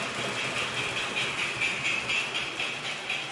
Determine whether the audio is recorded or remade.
recorded